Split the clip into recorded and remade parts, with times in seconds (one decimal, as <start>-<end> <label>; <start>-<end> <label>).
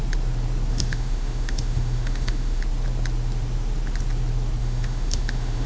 0.0-0.7 recorded; 0.7-2.6 remade; 2.6-4.6 recorded; 4.6-5.7 remade